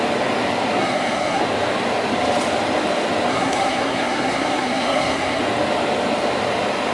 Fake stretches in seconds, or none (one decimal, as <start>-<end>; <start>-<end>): 0.8-1.4; 3.3-5.4